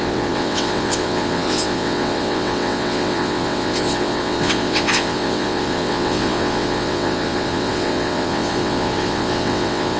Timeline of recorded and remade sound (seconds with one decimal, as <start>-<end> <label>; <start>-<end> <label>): 0.0-10.0 remade